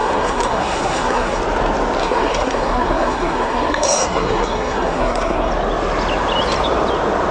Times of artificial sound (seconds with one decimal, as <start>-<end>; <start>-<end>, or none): 0.0-1.4; 2.0-5.5